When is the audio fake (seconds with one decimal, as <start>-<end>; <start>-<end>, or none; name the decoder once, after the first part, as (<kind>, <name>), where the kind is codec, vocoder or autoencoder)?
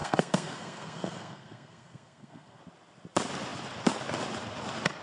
0.0-2.6 (codec, SNAC)